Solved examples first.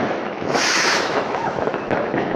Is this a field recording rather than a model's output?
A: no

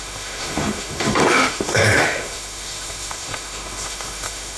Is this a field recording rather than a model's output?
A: no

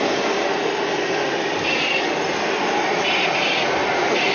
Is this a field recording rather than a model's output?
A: yes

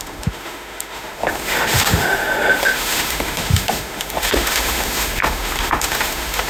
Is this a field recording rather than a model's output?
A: no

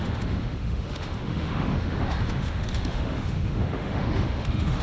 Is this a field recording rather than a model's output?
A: no